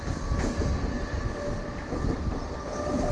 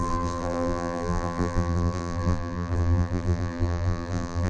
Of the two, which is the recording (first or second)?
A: first